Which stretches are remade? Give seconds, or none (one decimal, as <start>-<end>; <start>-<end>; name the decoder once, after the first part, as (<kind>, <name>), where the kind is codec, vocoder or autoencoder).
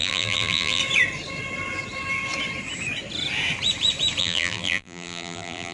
0.0-0.8 (vocoder, BigVGAN v2); 4.2-5.7